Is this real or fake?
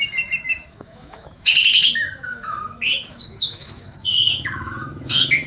fake